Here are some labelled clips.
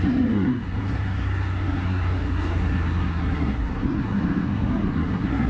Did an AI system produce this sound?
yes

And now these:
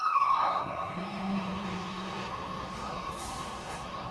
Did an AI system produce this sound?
yes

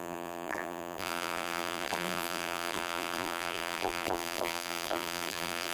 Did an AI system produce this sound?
yes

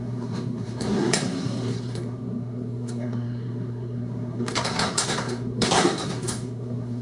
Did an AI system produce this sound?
yes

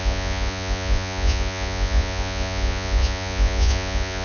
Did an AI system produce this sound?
yes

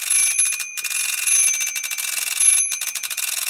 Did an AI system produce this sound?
yes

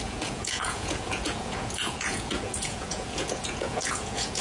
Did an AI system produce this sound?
yes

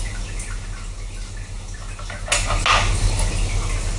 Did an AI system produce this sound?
no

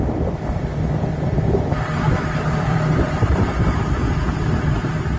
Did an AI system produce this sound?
yes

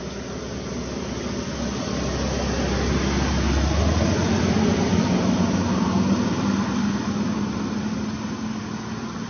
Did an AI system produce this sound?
no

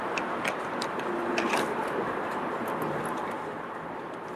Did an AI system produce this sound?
yes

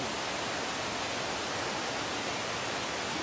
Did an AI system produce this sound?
no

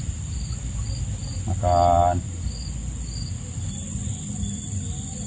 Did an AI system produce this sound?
no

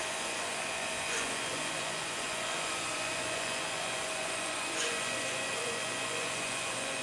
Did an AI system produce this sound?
yes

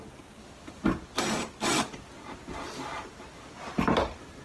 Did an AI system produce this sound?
no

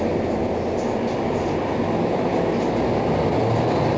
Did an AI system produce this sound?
no